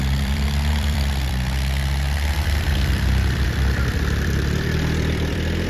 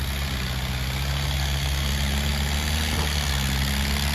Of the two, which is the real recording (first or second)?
second